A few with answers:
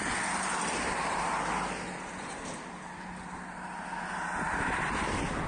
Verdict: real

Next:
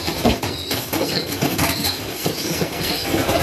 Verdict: fake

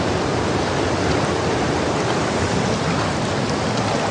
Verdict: real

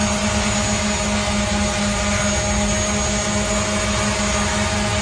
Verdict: real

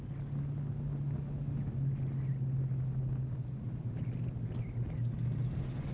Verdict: real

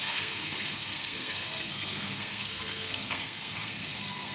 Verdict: fake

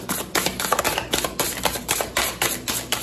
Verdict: real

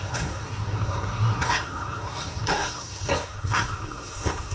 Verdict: fake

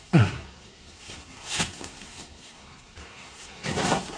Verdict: fake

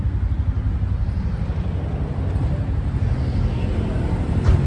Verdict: real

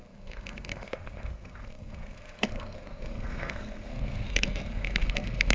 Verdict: fake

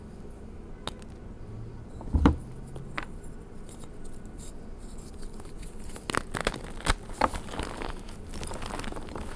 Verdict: real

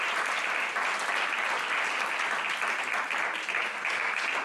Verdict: real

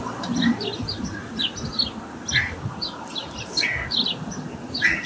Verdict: real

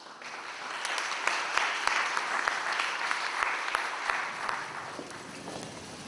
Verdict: real